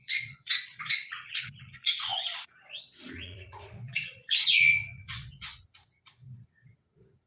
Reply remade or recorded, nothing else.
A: remade